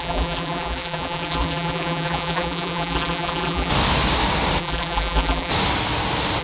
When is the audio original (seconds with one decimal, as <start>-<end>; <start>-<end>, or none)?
3.7-4.6; 5.5-6.4